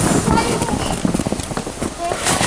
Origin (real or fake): real